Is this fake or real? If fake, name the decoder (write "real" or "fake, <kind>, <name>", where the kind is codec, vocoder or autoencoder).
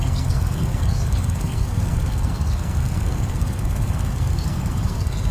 fake, codec, SNAC